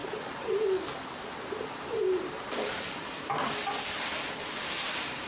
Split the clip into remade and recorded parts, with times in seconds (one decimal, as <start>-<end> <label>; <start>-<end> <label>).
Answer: 0.0-0.8 remade; 0.8-2.0 recorded; 2.0-5.3 remade